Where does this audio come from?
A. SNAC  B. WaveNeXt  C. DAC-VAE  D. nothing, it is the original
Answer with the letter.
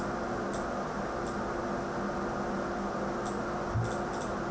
D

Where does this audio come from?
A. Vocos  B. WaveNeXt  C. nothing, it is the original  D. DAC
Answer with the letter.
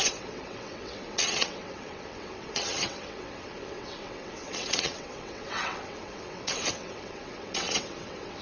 B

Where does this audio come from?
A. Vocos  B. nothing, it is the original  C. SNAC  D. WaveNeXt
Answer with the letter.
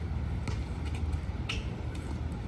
B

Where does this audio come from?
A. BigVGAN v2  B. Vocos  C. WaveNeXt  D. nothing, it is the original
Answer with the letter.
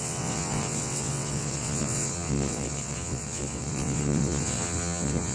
C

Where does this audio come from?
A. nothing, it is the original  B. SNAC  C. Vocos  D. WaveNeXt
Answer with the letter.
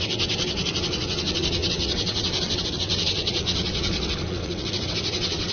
D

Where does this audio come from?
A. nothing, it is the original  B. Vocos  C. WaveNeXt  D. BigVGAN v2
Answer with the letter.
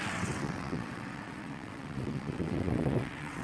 C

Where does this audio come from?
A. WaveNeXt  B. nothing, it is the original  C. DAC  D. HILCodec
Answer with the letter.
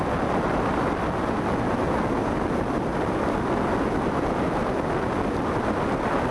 B